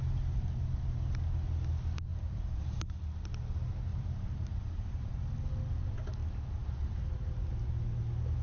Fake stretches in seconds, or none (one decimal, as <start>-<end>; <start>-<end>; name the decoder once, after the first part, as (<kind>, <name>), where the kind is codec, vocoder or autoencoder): 2.1-2.9 (vocoder, BigVGAN v2); 3.9-5.2